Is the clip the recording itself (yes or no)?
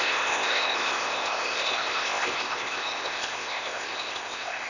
no